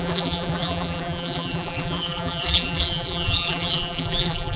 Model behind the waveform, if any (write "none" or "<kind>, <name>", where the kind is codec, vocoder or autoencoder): vocoder, BigVGAN v2